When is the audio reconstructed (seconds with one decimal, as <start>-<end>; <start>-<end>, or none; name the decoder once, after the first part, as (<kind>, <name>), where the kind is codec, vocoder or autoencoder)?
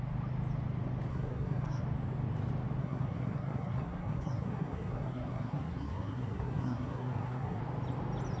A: 1.1-1.8 (codec, SNAC); 2.8-7.6